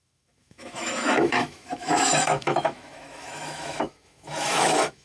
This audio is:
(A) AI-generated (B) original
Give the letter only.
A